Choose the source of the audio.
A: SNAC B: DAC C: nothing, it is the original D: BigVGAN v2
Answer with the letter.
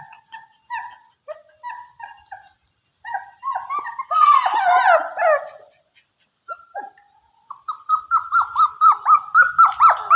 C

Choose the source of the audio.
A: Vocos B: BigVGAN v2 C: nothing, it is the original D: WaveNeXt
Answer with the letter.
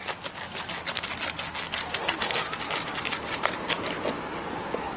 C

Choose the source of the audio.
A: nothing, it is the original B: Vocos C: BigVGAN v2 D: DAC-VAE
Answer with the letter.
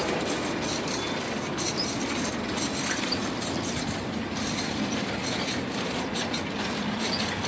C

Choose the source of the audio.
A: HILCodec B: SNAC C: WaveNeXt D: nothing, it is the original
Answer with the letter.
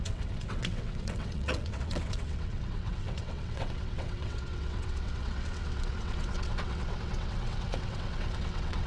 C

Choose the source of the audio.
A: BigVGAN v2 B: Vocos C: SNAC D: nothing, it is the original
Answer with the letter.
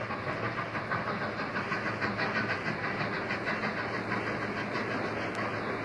D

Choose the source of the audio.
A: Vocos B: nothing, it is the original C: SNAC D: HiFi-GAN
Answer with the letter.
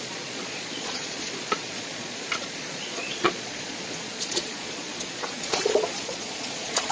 A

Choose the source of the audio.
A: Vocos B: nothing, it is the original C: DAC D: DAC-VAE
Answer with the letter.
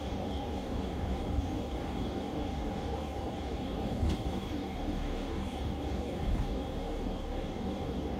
C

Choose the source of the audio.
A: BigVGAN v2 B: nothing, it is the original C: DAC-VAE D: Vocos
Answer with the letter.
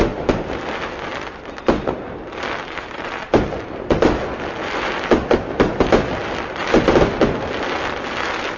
B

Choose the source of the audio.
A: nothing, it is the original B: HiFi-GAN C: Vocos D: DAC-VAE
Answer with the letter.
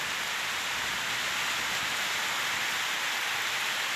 A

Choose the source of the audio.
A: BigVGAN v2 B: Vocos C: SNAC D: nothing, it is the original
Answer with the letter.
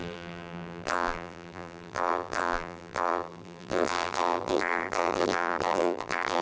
A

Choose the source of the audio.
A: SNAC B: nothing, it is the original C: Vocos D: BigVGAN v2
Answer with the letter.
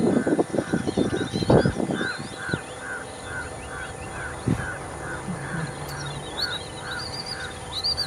D